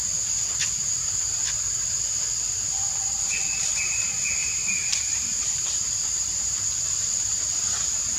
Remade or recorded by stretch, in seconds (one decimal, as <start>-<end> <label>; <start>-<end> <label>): 0.0-4.4 recorded; 4.4-7.7 remade; 7.7-8.2 recorded